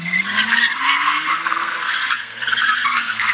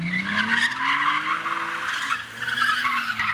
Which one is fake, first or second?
first